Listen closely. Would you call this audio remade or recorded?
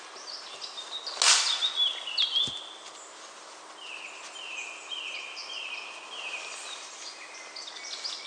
recorded